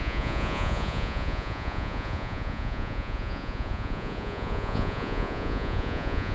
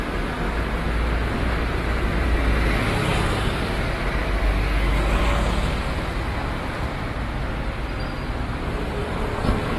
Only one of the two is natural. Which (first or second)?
second